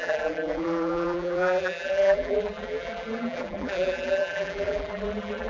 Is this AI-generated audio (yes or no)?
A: yes